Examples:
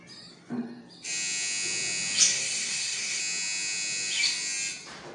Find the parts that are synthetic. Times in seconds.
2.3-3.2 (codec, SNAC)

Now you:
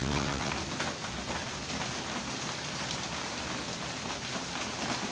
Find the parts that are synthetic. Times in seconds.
0.0-0.5 (vocoder, WaveNeXt)

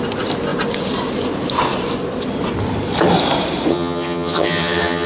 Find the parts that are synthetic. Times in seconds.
3.7-5.1 (vocoder, HiFi-GAN)

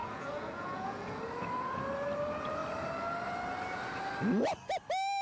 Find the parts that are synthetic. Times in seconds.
0.0-1.2 (vocoder, Vocos)

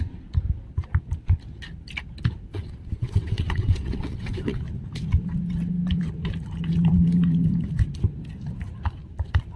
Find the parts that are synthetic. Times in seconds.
2.5-4.6 (vocoder, WaveNeXt)